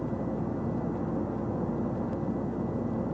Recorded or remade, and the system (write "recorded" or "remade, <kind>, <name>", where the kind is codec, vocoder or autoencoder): recorded